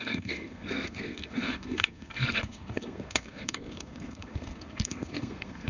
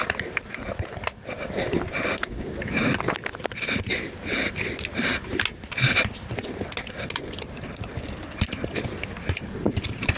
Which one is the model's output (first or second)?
first